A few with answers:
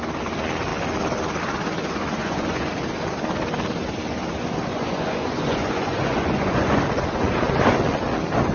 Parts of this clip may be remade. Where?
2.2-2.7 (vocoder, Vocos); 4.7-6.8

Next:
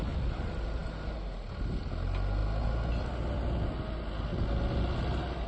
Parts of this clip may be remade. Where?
none

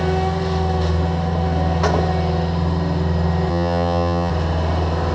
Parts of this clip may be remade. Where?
3.5-4.3 (vocoder, HiFi-GAN)

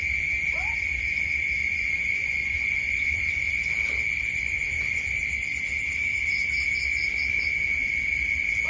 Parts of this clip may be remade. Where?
1.6-3.6 (vocoder, Vocos); 4.3-5.1